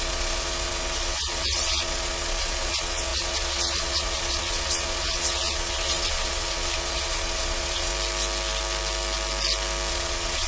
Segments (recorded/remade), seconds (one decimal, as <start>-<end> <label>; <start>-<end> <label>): 0.0-7.9 remade; 7.9-9.9 recorded; 9.9-10.5 remade